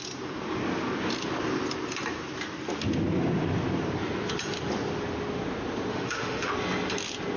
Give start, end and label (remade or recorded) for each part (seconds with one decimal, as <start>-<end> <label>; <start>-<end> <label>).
0.0-5.9 recorded; 5.9-6.5 remade; 6.5-7.4 recorded